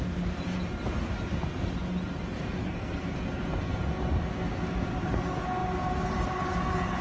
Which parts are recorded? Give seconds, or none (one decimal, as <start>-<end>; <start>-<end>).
0.0-2.6; 3.2-7.0